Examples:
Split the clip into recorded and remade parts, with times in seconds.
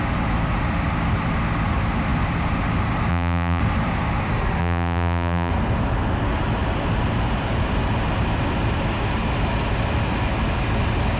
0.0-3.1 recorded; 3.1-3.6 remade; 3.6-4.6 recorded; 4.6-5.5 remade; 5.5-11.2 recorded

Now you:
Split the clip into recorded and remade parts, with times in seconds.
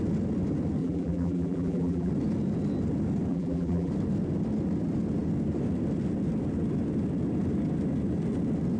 0.0-0.8 recorded; 0.8-2.1 remade; 2.1-3.3 recorded; 3.3-3.9 remade; 3.9-8.8 recorded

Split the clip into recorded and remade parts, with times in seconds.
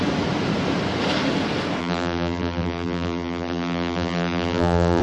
0.0-1.8 recorded; 1.8-5.0 remade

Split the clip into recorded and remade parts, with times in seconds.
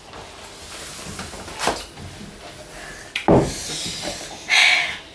0.0-5.1 recorded